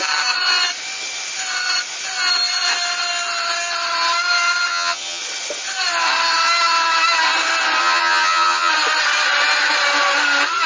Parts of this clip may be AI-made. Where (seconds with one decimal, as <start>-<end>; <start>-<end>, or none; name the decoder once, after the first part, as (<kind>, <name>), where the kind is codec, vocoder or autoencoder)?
4.7-5.2 (vocoder, HiFi-GAN); 7.8-8.7